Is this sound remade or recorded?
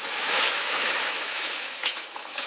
remade